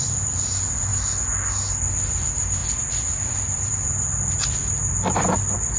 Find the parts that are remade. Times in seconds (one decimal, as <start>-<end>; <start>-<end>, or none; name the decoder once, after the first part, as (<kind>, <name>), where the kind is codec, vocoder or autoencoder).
none